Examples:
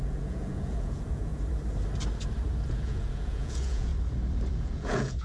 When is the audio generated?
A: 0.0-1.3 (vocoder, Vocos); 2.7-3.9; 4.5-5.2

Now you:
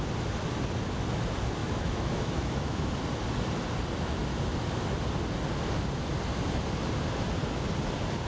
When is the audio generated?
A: 1.6-2.9 (autoencoder, DAC-VAE)

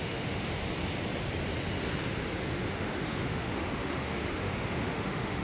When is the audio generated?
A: 0.0-0.6 (autoencoder, DAC-VAE); 2.4-5.4

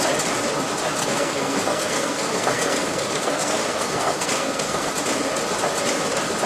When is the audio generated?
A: 1.0-4.9 (codec, SNAC)

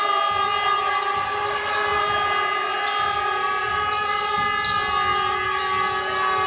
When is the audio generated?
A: 5.1-5.6 (vocoder, BigVGAN v2)